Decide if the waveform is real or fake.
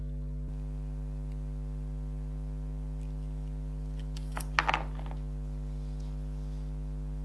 real